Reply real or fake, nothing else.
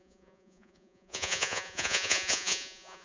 fake